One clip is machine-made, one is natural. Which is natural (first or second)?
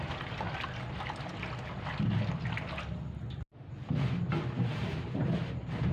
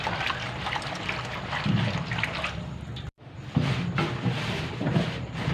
first